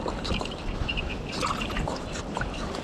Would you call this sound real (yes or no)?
yes